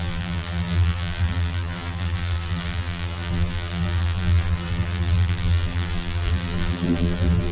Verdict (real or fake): fake